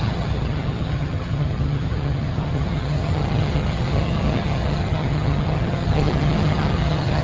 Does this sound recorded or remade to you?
remade